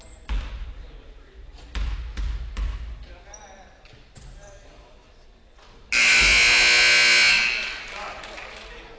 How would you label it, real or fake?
real